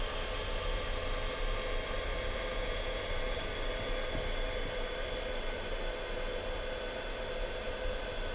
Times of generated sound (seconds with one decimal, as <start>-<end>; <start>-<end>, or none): 2.5-3.0